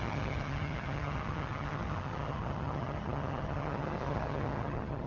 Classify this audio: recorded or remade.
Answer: remade